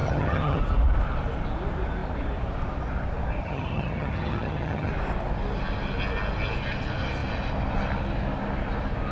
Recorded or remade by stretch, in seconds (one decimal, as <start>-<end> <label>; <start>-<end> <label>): 0.0-0.6 remade; 0.6-3.4 recorded; 3.4-4.9 remade; 4.9-9.1 recorded